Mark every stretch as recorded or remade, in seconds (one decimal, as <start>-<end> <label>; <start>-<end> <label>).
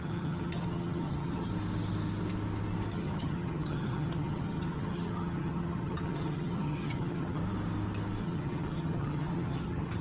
0.0-1.5 remade; 1.5-2.9 recorded; 2.9-7.4 remade; 7.4-8.2 recorded; 8.2-10.0 remade